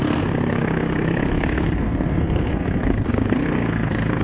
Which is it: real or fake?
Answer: fake